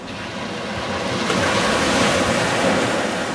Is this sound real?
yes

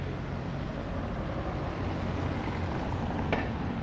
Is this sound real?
yes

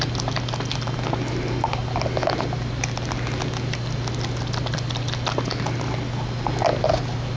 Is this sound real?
yes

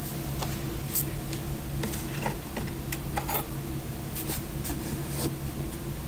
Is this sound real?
yes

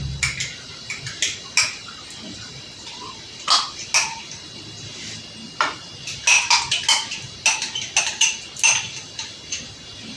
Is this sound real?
yes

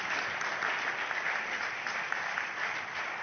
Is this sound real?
yes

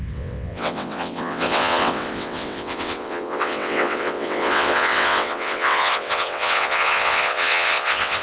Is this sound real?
no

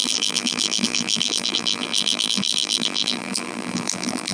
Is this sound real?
no